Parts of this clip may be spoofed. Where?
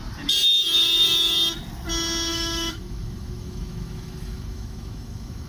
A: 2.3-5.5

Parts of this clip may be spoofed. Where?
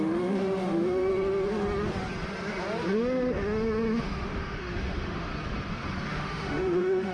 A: 0.0-1.1; 4.0-5.3; 6.1-7.1